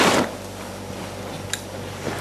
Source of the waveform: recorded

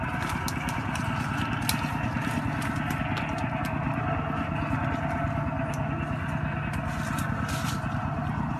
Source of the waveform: recorded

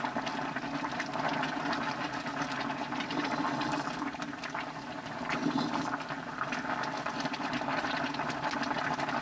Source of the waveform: recorded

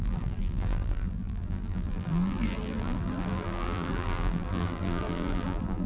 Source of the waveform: remade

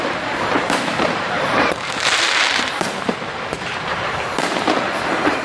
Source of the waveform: remade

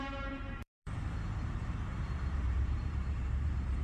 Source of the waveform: remade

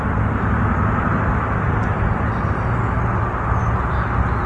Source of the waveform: recorded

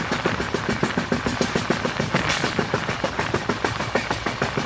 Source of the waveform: recorded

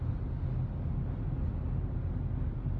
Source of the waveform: recorded